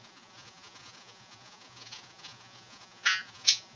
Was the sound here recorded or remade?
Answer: remade